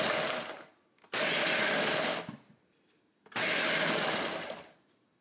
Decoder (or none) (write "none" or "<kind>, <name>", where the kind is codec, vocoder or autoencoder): none